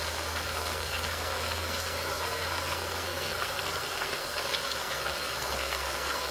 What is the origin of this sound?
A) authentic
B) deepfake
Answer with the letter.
B